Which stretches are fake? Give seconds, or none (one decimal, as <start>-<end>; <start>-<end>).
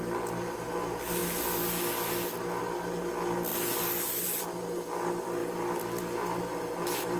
none